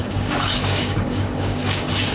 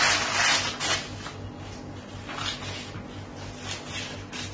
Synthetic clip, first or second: first